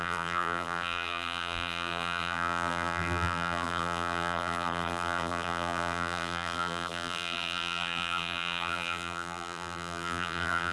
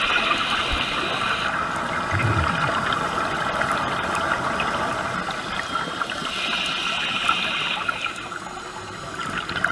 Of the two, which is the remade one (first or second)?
first